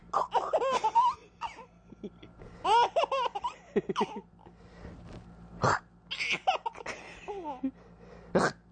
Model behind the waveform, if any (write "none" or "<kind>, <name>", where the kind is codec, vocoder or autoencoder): none